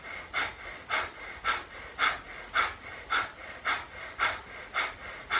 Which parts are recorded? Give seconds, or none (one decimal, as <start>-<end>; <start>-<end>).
0.0-5.4